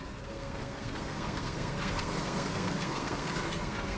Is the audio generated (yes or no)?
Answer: yes